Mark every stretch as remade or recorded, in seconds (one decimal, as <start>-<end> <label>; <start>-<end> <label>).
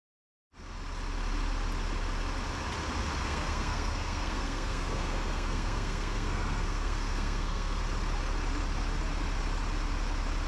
0.0-3.2 recorded; 3.2-7.8 remade; 7.8-10.5 recorded